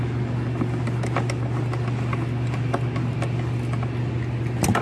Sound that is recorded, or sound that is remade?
recorded